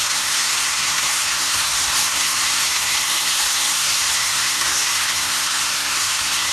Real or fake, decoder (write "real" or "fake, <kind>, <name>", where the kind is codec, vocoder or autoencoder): fake, codec, SNAC